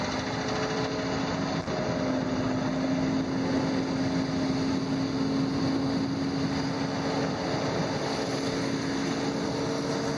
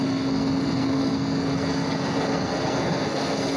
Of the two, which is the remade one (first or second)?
second